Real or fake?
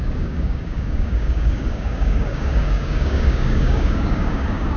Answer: fake